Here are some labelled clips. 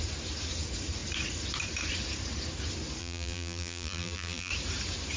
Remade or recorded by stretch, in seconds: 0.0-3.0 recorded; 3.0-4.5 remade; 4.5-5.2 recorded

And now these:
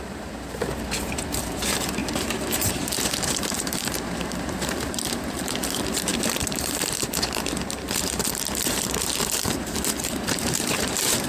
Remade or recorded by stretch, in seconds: 0.0-11.3 remade

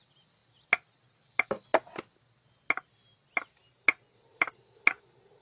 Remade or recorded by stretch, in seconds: 0.0-5.4 recorded

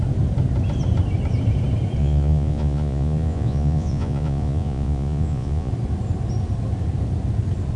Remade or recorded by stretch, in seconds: 0.0-2.0 recorded; 2.0-5.7 remade; 5.7-7.8 recorded

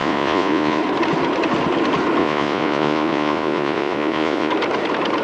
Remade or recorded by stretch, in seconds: 0.0-0.8 remade; 0.8-2.2 recorded; 2.2-4.5 remade; 4.5-5.2 recorded